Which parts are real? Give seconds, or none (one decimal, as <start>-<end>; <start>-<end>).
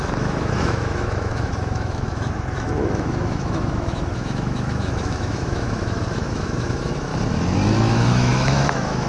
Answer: 7.1-7.9